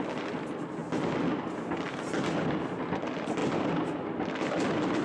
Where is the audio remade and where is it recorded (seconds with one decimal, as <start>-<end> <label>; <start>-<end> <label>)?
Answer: 0.0-5.0 recorded